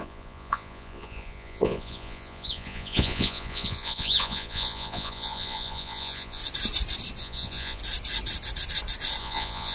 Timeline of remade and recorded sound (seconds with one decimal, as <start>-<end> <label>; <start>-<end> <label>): 0.0-6.4 remade; 6.4-7.2 recorded; 7.2-7.8 remade; 7.8-9.2 recorded; 9.2-9.7 remade